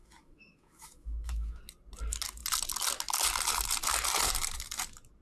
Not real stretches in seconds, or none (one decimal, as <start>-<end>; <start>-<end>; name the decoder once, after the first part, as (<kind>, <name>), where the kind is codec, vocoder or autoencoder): 0.0-1.6 (autoencoder, DAC-VAE)